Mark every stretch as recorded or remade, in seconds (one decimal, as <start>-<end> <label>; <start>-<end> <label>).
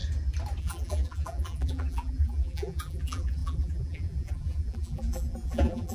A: 0.0-0.6 recorded; 0.6-5.9 remade